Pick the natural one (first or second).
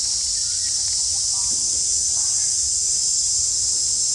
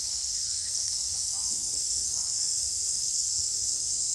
first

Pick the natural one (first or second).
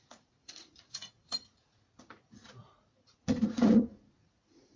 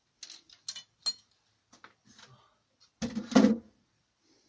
second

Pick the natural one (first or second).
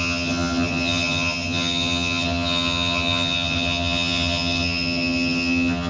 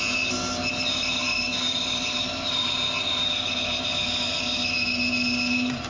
second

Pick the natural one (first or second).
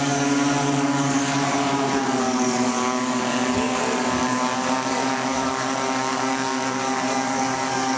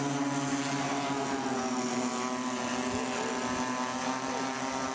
second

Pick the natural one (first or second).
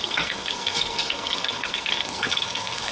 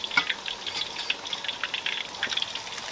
second